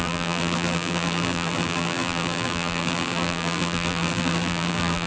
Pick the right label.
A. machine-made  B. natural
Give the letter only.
A